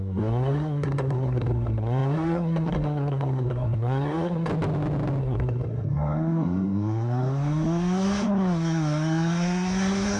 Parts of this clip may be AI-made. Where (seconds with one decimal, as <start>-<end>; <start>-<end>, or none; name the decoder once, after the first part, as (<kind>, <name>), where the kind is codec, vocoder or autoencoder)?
0.0-4.5 (codec, SNAC); 5.2-10.2